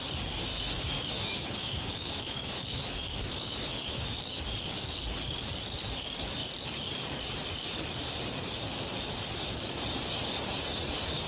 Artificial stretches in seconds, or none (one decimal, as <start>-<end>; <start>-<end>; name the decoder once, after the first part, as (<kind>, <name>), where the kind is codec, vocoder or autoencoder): 0.5-4.4 (autoencoder, DAC-VAE)